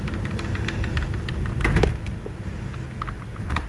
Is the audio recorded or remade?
recorded